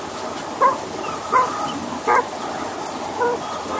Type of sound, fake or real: real